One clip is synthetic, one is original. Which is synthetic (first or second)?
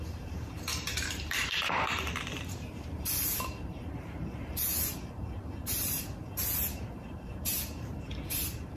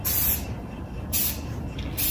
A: first